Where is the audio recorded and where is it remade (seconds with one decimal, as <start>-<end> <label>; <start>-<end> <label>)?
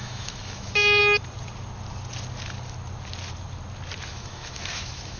0.0-1.0 remade; 1.0-4.1 recorded; 4.1-5.2 remade